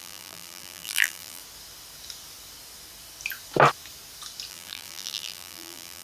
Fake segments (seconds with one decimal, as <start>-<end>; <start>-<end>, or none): 0.0-1.4; 4.5-6.0